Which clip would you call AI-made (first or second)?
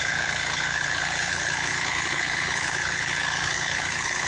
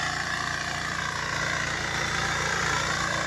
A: first